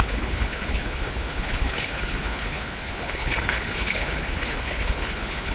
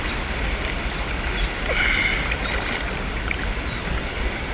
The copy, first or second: first